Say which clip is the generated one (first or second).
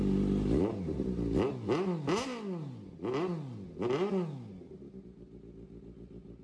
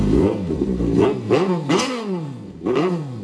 second